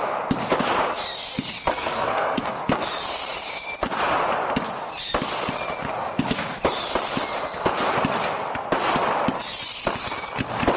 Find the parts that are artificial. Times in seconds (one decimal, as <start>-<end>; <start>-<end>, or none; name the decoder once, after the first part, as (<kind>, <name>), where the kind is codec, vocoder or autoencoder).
1.7-2.5 (codec, SNAC)